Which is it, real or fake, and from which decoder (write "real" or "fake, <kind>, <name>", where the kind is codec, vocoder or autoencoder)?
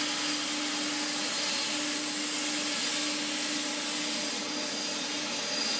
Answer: real